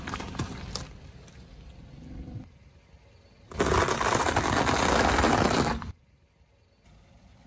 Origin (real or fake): real